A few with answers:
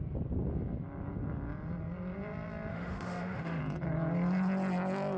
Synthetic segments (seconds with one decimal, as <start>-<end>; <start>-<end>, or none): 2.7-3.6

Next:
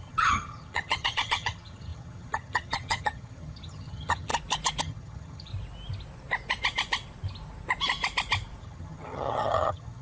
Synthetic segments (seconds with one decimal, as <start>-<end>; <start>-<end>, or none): 0.0-4.3; 4.8-5.5; 8.6-10.0

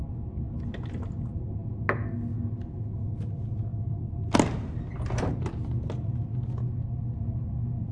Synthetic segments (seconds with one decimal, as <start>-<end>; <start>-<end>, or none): none